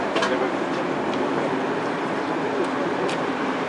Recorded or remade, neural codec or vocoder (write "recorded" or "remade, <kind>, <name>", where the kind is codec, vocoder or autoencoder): recorded